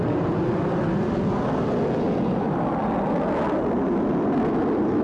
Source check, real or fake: real